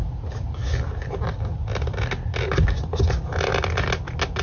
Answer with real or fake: real